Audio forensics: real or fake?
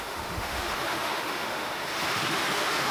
fake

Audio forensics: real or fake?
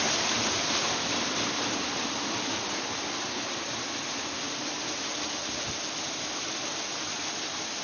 real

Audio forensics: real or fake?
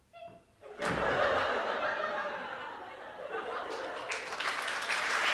real